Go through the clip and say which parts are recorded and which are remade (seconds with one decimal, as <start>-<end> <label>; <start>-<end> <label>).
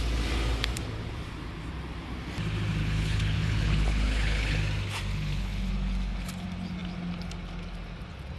0.0-2.8 recorded; 2.8-4.6 remade; 4.6-5.1 recorded; 5.1-5.7 remade; 5.7-8.4 recorded